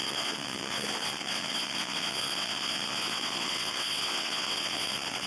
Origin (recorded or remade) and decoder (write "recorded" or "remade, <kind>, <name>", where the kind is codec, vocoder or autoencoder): remade, vocoder, WaveNeXt